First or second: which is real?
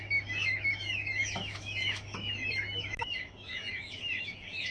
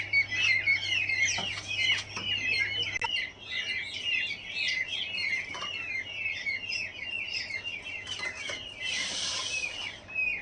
second